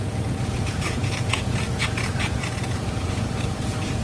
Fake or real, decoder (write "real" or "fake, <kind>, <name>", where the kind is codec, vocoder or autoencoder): fake, vocoder, Vocos